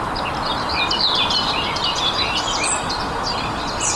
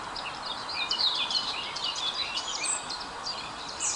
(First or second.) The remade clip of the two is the second